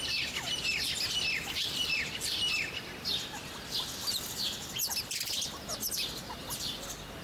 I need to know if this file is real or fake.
fake